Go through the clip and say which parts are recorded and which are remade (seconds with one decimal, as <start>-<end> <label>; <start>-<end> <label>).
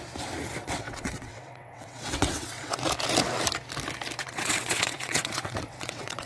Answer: 0.0-0.6 recorded; 0.6-2.8 remade; 2.8-4.2 recorded; 4.2-6.3 remade